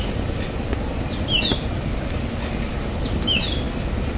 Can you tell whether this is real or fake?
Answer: real